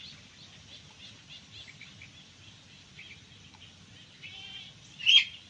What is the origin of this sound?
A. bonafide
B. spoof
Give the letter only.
A